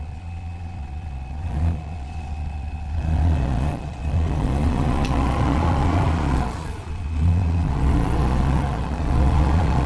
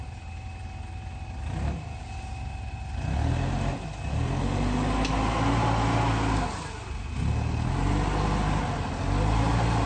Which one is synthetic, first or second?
first